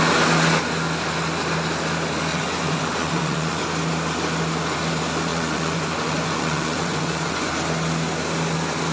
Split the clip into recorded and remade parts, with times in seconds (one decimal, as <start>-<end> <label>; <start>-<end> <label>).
0.0-2.3 recorded; 2.3-3.6 remade; 3.6-5.3 recorded; 5.3-7.5 remade; 7.5-8.9 recorded